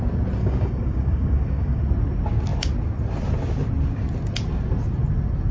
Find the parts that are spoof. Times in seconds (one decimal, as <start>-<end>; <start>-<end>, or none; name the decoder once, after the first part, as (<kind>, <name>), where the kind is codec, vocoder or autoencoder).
0.4-1.8 (codec, DAC)